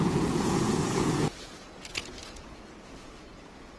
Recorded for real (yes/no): no